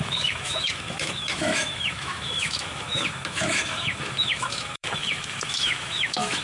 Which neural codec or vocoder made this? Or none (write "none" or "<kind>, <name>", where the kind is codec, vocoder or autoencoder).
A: autoencoder, DAC-VAE